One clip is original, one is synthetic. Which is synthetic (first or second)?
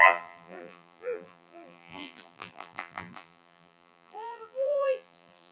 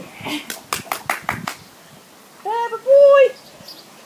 first